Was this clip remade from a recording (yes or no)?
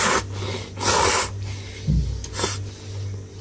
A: no